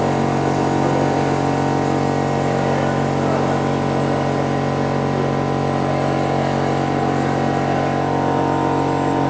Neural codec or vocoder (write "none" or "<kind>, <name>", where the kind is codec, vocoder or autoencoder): none